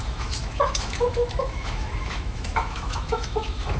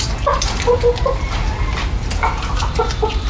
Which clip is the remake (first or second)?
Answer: first